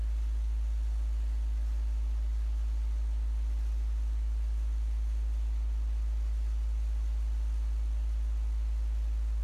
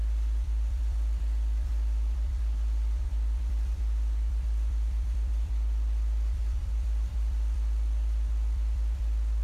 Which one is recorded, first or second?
first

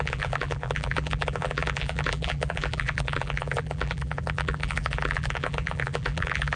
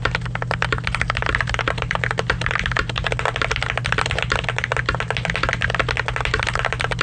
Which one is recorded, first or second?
second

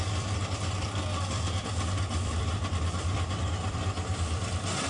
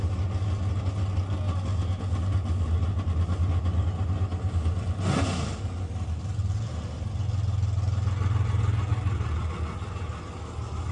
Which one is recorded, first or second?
second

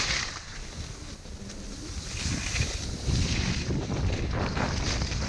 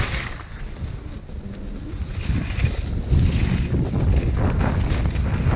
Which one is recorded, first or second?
second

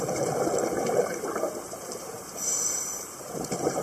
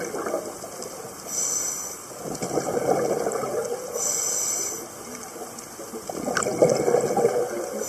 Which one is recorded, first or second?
second